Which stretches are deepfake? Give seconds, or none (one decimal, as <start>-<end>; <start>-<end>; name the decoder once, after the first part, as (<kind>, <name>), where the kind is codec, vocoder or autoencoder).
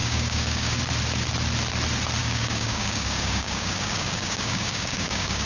0.0-0.8 (codec, DAC); 2.2-5.5